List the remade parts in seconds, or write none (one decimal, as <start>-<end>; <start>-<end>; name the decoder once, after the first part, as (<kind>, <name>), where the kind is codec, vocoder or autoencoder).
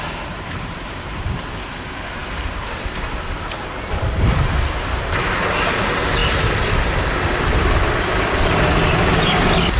2.2-4.4 (vocoder, BigVGAN v2); 6.2-8.6